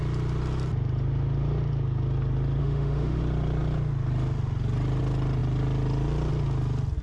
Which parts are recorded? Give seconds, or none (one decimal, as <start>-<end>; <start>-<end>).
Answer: 0.0-2.6; 3.2-7.0

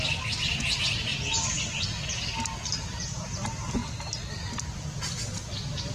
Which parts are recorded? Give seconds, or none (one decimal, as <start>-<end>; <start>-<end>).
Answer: 0.0-5.9